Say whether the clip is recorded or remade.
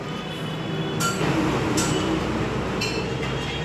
recorded